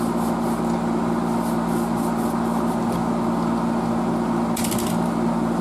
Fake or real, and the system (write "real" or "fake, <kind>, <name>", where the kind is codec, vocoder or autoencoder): real